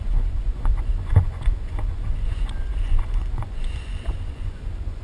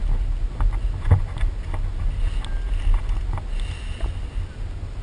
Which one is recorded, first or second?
second